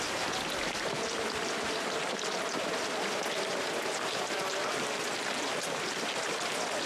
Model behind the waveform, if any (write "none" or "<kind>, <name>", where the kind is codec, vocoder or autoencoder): none